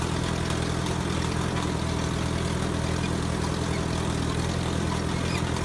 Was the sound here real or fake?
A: real